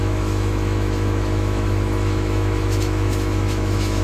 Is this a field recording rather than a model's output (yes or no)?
no